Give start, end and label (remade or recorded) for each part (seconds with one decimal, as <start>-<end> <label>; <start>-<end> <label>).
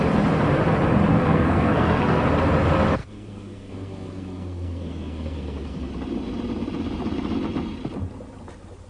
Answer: 0.0-1.1 recorded; 1.1-2.2 remade; 2.2-3.0 recorded; 3.0-5.9 remade; 5.9-8.9 recorded